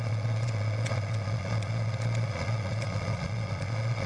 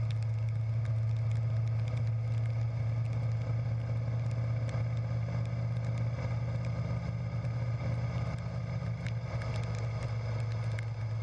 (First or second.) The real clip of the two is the second